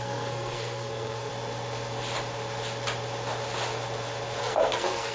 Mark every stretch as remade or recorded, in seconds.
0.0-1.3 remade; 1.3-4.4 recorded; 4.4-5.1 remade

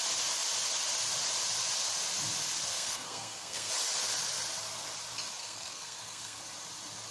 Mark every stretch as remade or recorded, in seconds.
0.0-2.7 recorded; 2.7-3.7 remade; 3.7-5.4 recorded; 5.4-6.4 remade; 6.4-7.1 recorded

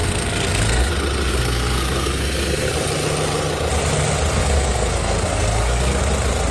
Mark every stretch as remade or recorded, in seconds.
0.0-0.9 remade; 0.9-1.3 recorded; 1.3-2.7 remade; 2.7-4.4 recorded; 4.4-6.0 remade; 6.0-6.5 recorded

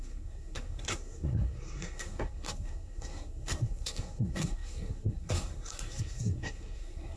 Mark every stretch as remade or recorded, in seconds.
0.0-7.2 remade